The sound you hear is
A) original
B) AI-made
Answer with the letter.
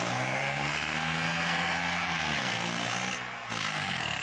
B